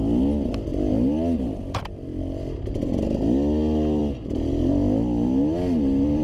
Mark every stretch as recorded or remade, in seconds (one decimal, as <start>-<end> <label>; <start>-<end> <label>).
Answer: 0.0-6.2 recorded